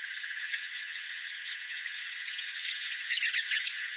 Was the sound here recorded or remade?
remade